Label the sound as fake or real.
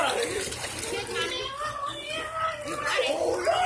real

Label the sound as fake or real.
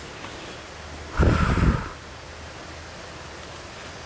real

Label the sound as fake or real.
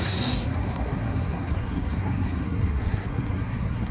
fake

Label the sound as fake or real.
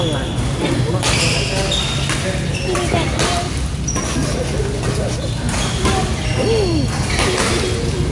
real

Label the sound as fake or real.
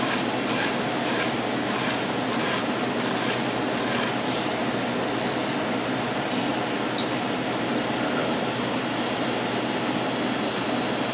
real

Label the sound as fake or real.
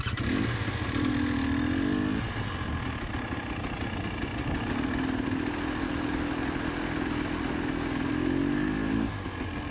real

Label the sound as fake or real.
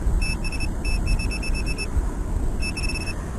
real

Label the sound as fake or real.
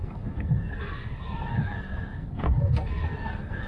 fake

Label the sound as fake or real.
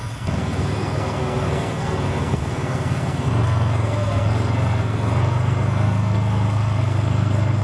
fake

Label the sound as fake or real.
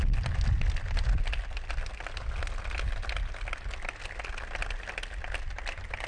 real